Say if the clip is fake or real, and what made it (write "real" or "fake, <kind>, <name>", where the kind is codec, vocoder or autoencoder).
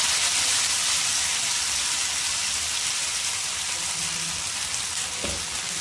real